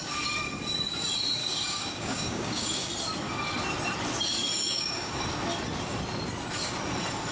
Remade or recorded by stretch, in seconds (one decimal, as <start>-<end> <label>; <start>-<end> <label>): 0.0-1.4 recorded; 1.4-2.9 remade; 2.9-4.5 recorded; 4.5-5.2 remade; 5.2-7.3 recorded